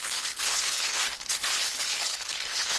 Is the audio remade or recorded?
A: remade